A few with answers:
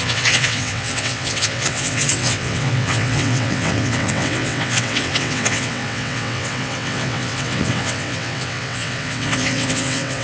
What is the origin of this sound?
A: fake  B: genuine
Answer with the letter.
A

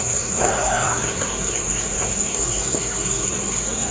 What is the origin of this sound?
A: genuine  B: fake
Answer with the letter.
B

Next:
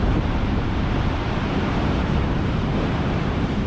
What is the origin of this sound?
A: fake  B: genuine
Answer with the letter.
A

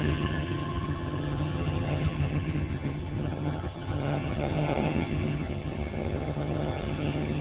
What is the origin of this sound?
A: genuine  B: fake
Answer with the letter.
B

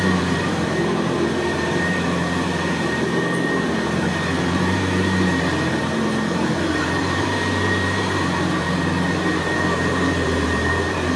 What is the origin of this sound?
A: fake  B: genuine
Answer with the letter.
A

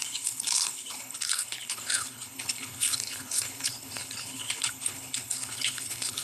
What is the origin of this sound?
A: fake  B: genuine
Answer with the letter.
A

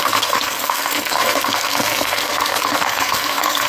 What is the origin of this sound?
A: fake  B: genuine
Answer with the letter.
A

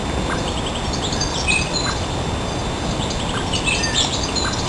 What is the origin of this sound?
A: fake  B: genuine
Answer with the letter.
B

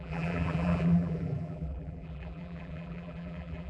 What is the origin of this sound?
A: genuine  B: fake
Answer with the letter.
B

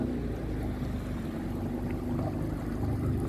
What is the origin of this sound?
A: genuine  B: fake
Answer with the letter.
A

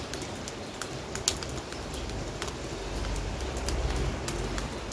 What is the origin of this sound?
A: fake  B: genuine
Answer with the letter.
B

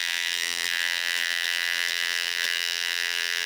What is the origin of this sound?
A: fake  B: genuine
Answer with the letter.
A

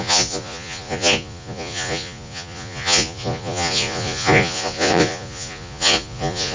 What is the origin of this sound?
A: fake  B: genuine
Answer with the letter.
A